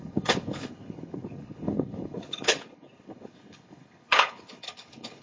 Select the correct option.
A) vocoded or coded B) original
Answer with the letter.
A